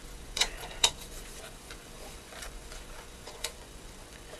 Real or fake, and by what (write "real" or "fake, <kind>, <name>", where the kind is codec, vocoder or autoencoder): fake, vocoder, Vocos